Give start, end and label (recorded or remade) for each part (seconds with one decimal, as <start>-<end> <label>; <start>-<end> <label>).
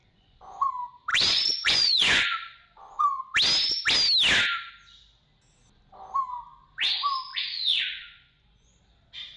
0.0-0.7 remade; 0.7-1.1 recorded; 1.1-3.2 remade; 3.2-7.3 recorded; 7.3-8.8 remade; 8.8-9.4 recorded